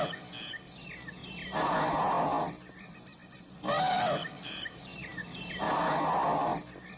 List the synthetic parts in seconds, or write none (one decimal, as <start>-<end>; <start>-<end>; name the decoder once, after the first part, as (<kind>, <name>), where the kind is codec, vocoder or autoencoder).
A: 4.2-5.5 (vocoder, BigVGAN v2)

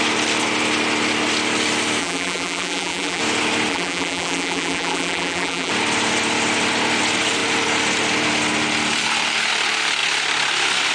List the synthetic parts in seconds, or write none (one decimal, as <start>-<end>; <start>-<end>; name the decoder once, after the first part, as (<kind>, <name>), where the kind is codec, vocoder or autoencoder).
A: 2.0-3.2 (vocoder, BigVGAN v2); 3.7-5.7

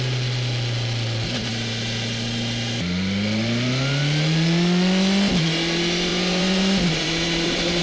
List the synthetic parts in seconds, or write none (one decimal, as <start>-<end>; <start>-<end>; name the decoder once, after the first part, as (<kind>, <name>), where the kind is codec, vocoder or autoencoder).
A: 6.1-7.8 (vocoder, BigVGAN v2)

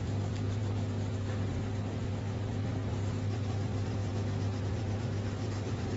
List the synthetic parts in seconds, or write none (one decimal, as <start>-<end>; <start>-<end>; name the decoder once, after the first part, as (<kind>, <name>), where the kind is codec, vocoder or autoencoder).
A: 0.0-0.6 (vocoder, BigVGAN v2); 2.2-4.0; 4.7-6.0